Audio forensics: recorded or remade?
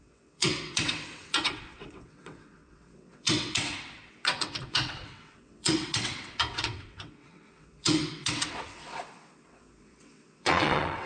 remade